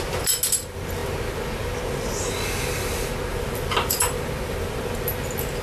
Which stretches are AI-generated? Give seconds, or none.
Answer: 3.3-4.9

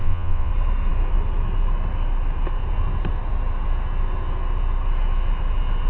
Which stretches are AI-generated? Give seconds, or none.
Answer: 0.0-0.5

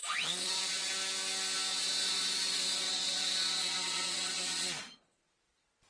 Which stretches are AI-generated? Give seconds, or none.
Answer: 0.0-0.9; 1.7-5.2

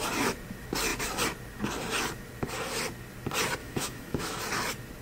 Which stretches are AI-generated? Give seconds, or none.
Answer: 3.6-4.4

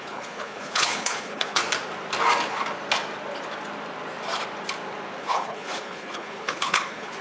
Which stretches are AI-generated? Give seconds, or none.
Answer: 0.0-1.6; 5.2-7.2